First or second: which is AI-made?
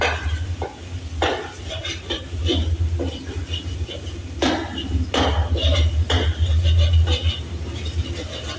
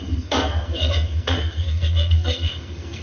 second